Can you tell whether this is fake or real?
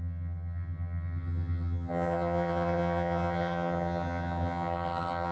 fake